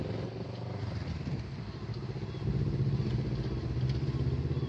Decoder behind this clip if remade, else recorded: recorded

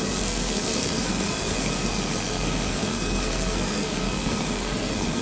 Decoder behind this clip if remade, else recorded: remade, codec, SNAC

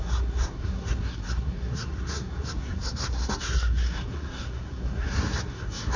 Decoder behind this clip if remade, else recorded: remade, codec, SNAC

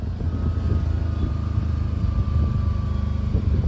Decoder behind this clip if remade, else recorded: recorded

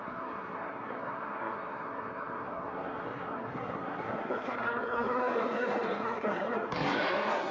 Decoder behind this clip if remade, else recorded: remade, codec, SNAC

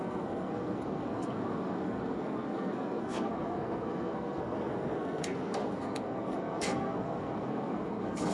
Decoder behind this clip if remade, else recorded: remade, codec, SNAC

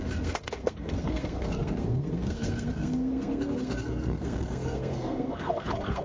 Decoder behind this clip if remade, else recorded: remade, codec, SNAC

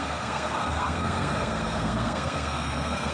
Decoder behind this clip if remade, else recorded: remade, codec, SNAC